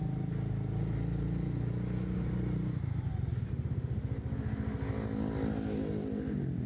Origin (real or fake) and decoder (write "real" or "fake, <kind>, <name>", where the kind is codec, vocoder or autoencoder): real